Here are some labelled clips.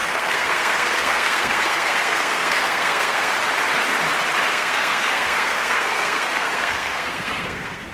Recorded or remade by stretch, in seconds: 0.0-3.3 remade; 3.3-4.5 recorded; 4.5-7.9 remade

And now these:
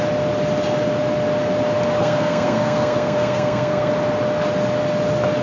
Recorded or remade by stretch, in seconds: 0.0-2.0 recorded; 2.0-3.9 remade; 3.9-5.4 recorded

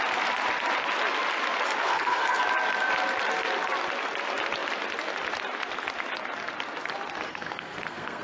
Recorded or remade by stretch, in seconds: 0.0-1.8 recorded; 1.8-2.4 remade; 2.4-7.3 recorded; 7.3-8.2 remade

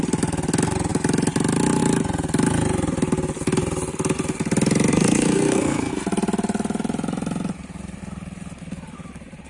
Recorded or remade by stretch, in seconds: 0.0-4.9 recorded; 4.9-5.9 remade; 5.9-9.5 recorded

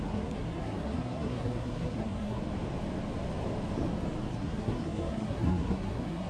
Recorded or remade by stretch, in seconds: 0.0-2.4 remade; 2.4-4.3 recorded; 4.3-6.3 remade